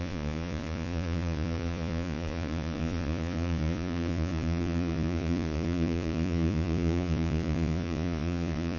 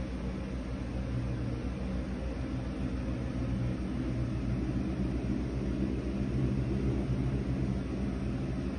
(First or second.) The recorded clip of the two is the second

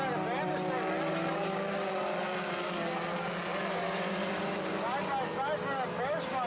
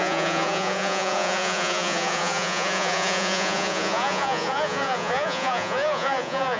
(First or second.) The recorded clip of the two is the first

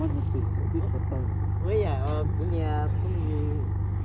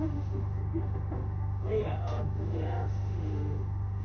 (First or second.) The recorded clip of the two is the first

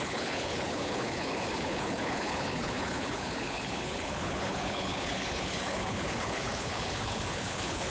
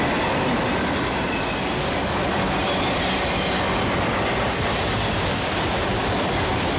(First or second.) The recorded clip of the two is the second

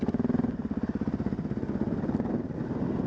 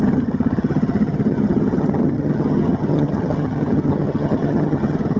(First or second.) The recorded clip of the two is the first